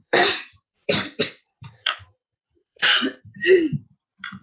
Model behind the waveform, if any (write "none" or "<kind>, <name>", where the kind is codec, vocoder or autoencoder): vocoder, BigVGAN v2